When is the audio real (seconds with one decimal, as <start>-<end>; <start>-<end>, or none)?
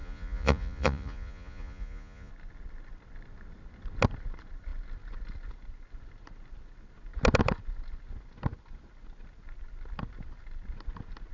2.3-11.3